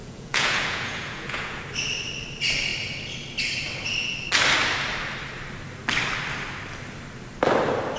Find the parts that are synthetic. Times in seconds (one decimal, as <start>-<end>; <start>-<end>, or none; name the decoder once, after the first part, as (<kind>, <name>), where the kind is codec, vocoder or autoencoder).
0.0-1.6 (vocoder, Vocos)

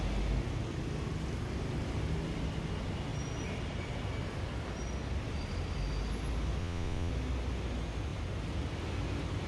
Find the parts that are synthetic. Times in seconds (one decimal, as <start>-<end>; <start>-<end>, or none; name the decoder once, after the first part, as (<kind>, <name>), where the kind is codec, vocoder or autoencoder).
6.6-7.1 (vocoder, Vocos)

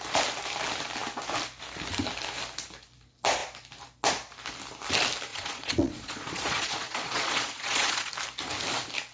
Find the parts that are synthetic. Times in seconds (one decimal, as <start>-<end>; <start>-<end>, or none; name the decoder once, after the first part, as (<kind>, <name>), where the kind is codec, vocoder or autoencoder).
5.3-8.1 (vocoder, Vocos)

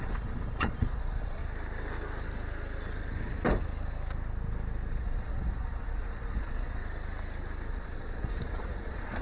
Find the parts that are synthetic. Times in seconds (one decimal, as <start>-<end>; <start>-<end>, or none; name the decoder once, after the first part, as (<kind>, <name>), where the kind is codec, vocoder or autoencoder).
0.0-1.4 (vocoder, Vocos); 4.9-6.8; 7.7-9.2